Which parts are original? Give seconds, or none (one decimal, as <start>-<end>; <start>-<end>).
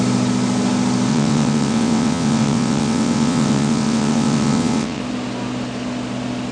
0.0-1.1; 5.0-6.5